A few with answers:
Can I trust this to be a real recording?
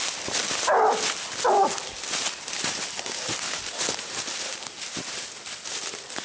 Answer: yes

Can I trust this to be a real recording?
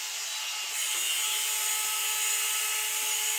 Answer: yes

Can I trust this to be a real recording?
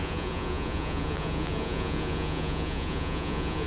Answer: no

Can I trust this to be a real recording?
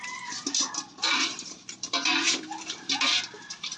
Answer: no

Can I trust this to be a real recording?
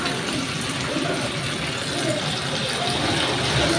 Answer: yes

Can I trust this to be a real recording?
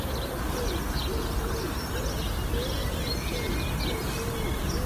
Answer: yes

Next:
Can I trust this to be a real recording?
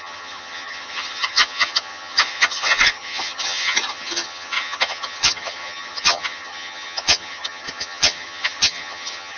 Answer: no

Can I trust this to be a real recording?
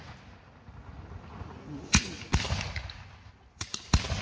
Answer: yes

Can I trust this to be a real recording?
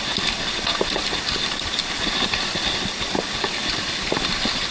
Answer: yes